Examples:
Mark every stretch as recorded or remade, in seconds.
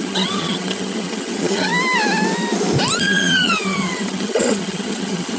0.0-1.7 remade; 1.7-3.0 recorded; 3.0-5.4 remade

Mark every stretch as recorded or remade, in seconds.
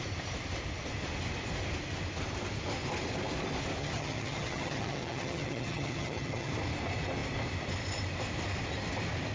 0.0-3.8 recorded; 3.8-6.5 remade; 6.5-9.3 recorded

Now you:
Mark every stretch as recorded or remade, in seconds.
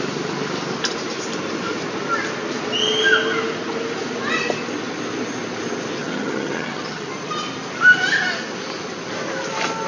0.0-6.0 recorded; 6.0-7.1 remade; 7.1-9.9 recorded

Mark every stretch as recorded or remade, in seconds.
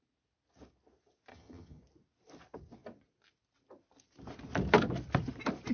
0.0-1.3 recorded; 1.3-1.8 remade; 1.8-5.7 recorded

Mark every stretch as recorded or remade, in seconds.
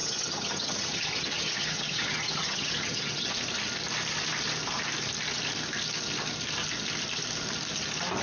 0.0-3.3 remade; 3.3-8.2 recorded